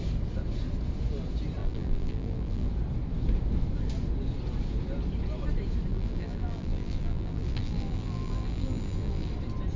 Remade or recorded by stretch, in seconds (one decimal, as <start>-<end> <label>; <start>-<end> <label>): 0.0-1.6 recorded; 1.6-2.7 remade; 2.7-5.9 recorded; 5.9-9.3 remade; 9.3-9.8 recorded